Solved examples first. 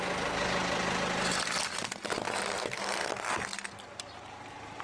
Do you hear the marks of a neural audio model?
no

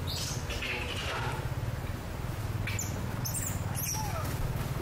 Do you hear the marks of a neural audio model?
no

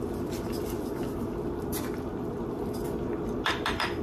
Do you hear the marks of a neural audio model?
no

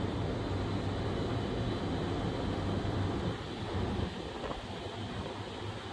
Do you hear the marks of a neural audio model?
no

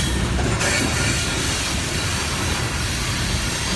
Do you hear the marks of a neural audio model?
no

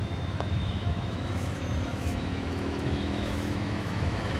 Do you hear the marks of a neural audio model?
yes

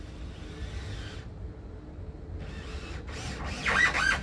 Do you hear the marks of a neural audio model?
no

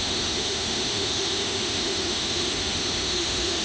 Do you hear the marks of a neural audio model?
yes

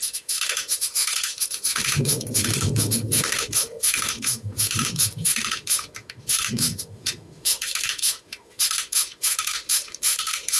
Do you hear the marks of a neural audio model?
yes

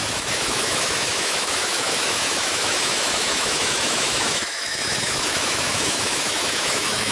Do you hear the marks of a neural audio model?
yes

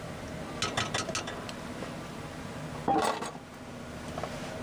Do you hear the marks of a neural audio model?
no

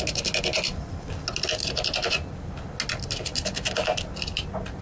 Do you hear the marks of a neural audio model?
no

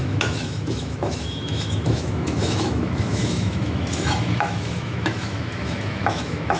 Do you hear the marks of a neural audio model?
yes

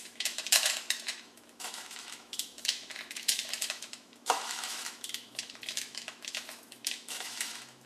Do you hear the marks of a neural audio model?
yes